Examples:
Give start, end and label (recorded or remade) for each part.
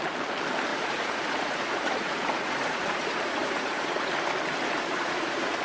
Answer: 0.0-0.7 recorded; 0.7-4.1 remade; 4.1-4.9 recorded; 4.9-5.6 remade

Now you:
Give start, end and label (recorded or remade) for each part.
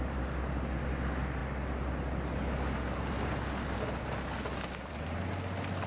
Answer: 0.0-5.9 recorded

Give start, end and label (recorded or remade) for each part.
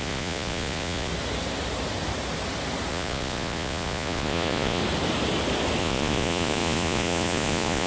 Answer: 0.0-1.1 remade; 1.1-2.9 recorded; 2.9-4.8 remade; 4.8-5.8 recorded; 5.8-7.9 remade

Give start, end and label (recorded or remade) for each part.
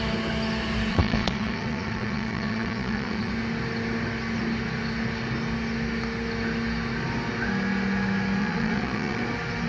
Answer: 0.0-0.9 recorded; 0.9-3.3 remade; 3.3-8.4 recorded; 8.4-9.2 remade; 9.2-9.7 recorded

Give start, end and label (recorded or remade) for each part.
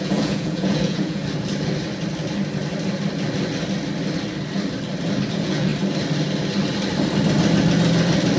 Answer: 0.0-1.2 remade; 1.2-5.3 recorded; 5.3-5.7 remade; 5.7-8.4 recorded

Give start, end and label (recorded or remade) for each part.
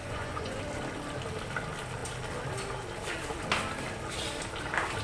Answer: 0.0-0.6 remade; 0.6-5.0 recorded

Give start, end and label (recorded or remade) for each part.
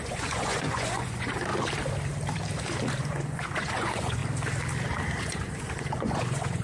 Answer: 0.0-1.5 remade; 1.5-3.0 recorded; 3.0-4.2 remade; 4.2-5.2 recorded; 5.2-6.6 remade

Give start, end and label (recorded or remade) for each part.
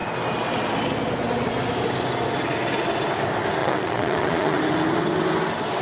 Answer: 0.0-3.6 recorded; 3.6-4.6 remade; 4.6-5.8 recorded